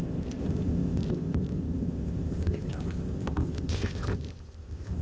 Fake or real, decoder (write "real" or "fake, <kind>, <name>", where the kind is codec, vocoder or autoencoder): fake, codec, ZipCodec